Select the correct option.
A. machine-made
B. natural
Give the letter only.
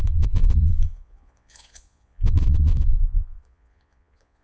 A